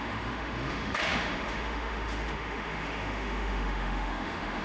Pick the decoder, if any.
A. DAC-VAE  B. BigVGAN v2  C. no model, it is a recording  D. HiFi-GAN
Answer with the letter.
A